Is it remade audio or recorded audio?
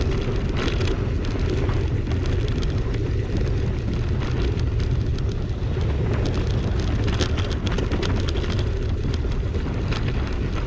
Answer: recorded